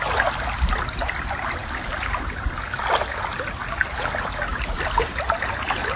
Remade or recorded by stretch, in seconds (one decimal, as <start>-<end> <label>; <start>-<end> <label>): 0.0-6.0 recorded